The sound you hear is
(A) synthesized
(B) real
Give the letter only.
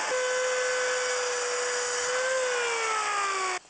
B